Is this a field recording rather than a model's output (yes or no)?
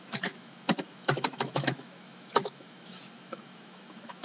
no